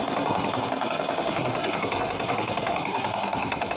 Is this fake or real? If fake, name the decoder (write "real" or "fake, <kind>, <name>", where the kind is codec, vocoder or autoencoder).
fake, codec, SNAC